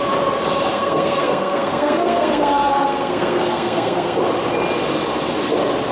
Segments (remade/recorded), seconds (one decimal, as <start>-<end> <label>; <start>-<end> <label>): 0.0-0.7 recorded; 0.7-4.2 remade; 4.2-5.9 recorded